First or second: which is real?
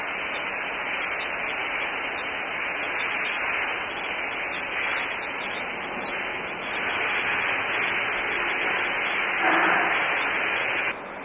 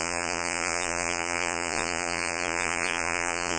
first